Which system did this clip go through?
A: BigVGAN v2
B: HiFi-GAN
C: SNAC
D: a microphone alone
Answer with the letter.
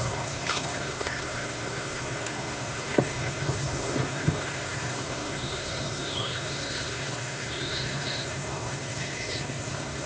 C